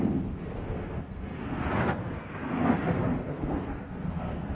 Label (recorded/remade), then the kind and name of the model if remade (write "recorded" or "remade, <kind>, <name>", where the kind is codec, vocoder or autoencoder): remade, codec, SNAC